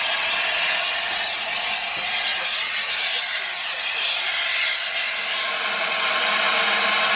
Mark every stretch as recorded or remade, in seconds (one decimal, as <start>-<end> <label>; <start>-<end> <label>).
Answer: 0.0-7.2 recorded